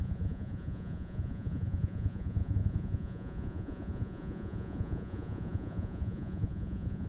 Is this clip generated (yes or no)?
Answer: yes